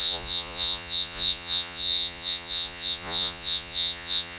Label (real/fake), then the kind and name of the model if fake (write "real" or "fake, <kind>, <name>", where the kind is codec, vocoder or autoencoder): fake, vocoder, Vocos